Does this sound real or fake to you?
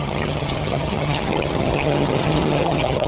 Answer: fake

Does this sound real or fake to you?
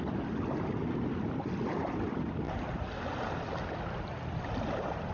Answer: real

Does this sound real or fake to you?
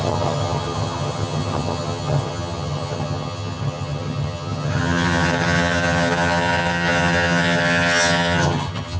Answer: fake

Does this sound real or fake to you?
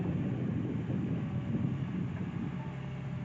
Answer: real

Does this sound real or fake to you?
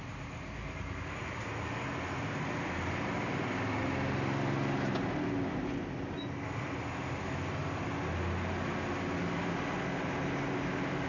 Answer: real